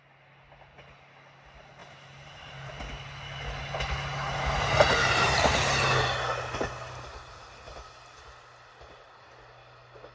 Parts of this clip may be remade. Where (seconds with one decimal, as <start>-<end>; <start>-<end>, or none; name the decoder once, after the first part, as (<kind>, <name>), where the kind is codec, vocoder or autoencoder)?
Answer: 1.8-2.8 (vocoder, BigVGAN v2)